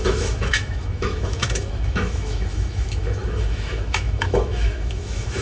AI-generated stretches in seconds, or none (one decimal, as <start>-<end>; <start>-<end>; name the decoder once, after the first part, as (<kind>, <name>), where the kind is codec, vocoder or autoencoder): 0.0-5.4 (autoencoder, DAC-VAE)